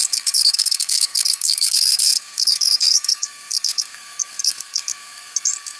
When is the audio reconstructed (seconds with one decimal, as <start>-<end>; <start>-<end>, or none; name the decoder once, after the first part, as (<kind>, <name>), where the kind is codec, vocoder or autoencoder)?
0.0-5.8 (codec, SNAC)